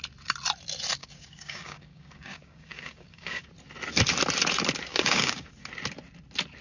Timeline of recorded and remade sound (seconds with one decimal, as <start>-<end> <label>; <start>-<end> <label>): 0.0-1.0 recorded; 1.0-3.5 remade; 3.5-4.9 recorded; 4.9-5.5 remade; 5.5-6.6 recorded

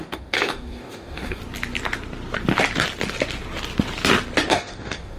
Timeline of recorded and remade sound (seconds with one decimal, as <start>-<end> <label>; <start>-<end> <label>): 0.0-1.4 remade; 1.4-4.5 recorded; 4.5-5.2 remade